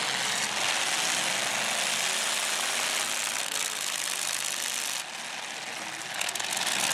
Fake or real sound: real